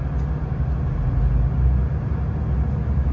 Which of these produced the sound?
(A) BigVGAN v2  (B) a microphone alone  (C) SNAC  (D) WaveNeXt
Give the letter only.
B